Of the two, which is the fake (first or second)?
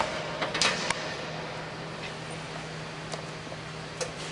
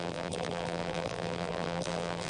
second